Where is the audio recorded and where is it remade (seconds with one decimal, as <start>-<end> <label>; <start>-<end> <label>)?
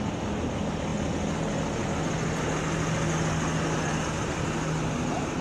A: 0.0-5.4 recorded